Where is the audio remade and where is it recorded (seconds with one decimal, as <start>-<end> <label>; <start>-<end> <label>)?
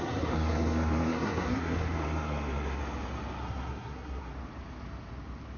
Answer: 0.0-2.8 remade; 2.8-3.4 recorded; 3.4-4.3 remade; 4.3-5.6 recorded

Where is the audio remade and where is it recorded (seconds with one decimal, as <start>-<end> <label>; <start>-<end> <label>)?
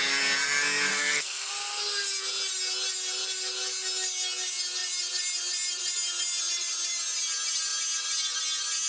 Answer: 0.0-0.9 recorded; 0.9-1.5 remade; 1.5-8.9 recorded